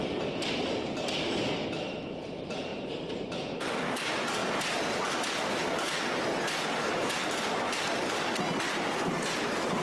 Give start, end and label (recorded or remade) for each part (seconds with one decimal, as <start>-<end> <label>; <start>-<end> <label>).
0.0-2.7 recorded; 2.7-3.2 remade; 3.2-9.8 recorded